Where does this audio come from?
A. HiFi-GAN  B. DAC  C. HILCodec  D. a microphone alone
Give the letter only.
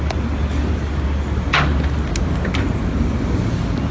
D